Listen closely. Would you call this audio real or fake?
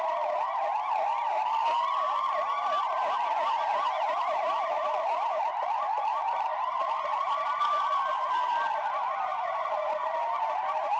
fake